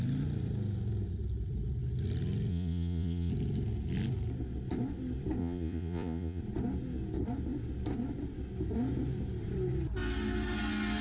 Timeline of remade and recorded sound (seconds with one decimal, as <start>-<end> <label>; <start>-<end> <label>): 0.0-2.5 recorded; 2.5-3.3 remade; 3.3-5.4 recorded; 5.4-6.4 remade; 6.4-11.0 recorded